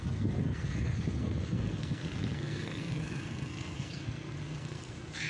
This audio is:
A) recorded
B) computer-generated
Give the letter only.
B